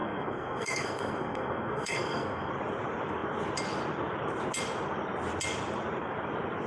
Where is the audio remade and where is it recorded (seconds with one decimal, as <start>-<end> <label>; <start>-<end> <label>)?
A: 0.0-2.5 remade; 2.5-6.7 recorded